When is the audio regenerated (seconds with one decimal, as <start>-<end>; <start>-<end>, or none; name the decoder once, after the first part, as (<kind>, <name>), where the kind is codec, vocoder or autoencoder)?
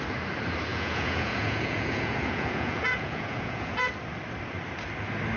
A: 0.7-3.9 (vocoder, Vocos)